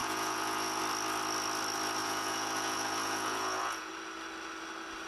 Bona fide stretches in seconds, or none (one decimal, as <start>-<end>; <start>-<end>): 0.8-2.0; 3.9-5.1